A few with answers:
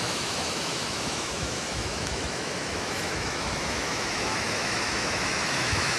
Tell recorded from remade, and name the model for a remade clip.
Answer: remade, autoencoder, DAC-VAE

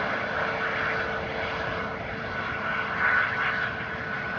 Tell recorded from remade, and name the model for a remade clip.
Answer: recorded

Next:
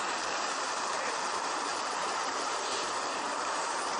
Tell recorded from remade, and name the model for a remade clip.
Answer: remade, vocoder, BigVGAN v2